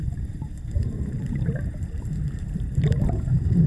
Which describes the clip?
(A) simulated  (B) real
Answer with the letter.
A